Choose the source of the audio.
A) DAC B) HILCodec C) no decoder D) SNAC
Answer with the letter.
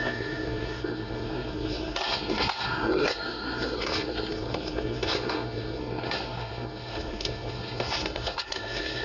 D